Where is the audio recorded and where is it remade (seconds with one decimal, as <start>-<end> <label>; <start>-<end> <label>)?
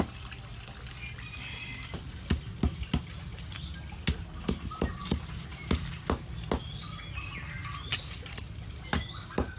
0.0-9.6 recorded